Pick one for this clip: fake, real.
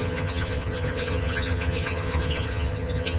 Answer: fake